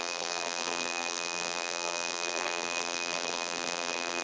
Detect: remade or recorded remade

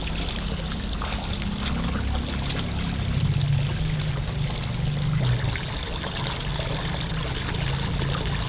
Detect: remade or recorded recorded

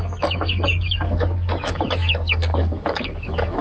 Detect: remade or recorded remade